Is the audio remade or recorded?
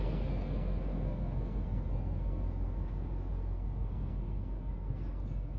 remade